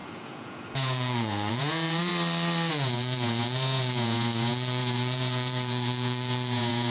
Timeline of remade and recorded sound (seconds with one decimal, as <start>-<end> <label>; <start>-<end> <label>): 0.0-2.1 remade; 2.1-2.7 recorded; 2.7-6.9 remade